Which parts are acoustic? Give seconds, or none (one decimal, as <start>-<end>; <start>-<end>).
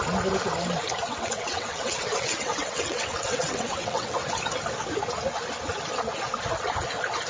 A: 0.0-1.1; 4.2-7.3